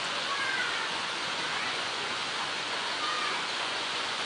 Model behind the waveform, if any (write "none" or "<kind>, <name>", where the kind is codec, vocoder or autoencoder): vocoder, Vocos